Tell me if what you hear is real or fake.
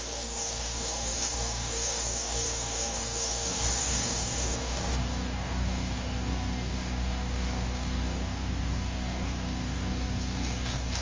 fake